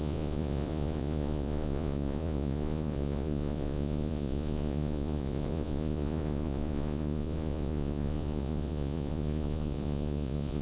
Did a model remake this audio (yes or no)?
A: yes